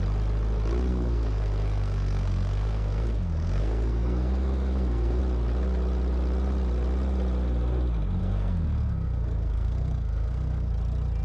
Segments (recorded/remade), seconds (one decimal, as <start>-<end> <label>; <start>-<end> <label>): 0.0-0.9 recorded; 0.9-5.2 remade; 5.2-8.2 recorded; 8.2-10.7 remade; 10.7-11.2 recorded